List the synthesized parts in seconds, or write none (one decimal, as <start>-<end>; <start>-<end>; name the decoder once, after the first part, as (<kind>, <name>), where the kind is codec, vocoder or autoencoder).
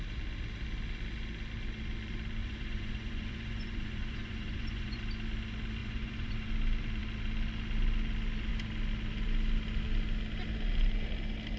2.4-5.0 (vocoder, Vocos); 5.8-6.5